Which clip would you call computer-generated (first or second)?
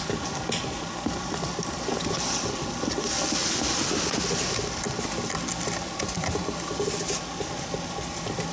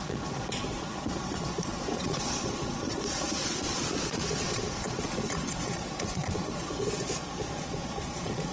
second